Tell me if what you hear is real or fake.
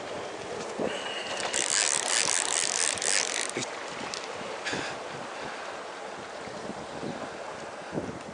real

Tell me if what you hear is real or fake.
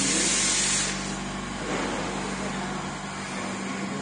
real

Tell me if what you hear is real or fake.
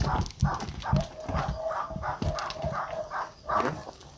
real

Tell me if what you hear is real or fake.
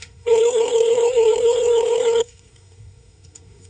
fake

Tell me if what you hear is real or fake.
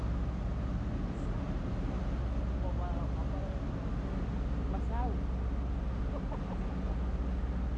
real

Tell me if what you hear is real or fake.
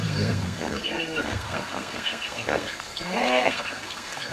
fake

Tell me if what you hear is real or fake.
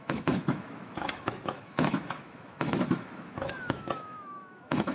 fake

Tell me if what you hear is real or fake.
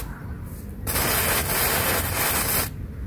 real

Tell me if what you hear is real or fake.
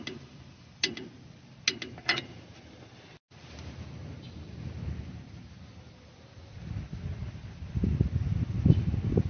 real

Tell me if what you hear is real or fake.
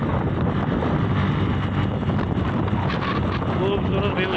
real